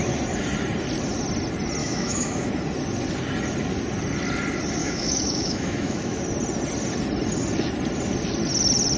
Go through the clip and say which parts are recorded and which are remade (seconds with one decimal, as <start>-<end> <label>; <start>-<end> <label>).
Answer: 0.0-1.8 recorded; 1.8-2.5 remade; 2.5-4.8 recorded; 4.8-6.2 remade; 6.2-9.0 recorded